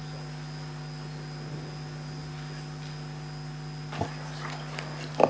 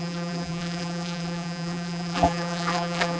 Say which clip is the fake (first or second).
second